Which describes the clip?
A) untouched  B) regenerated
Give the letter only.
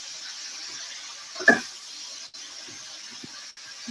A